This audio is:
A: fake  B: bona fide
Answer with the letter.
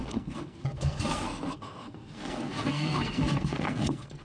A